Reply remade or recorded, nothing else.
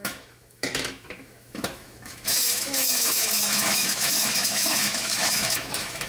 remade